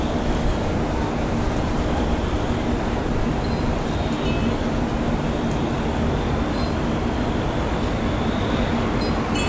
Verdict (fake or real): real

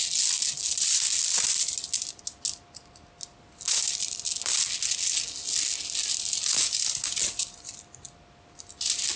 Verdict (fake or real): real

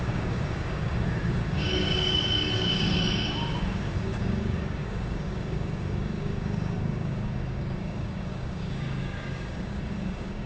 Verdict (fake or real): fake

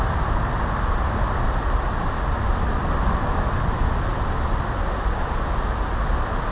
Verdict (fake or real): real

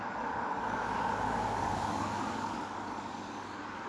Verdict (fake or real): fake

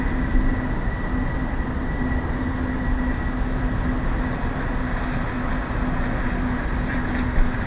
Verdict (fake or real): real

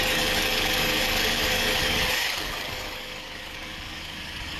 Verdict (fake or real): fake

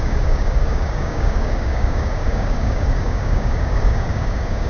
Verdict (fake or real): fake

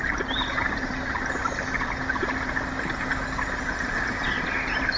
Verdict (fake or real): real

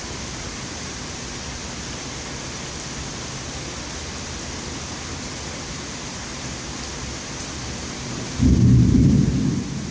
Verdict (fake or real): real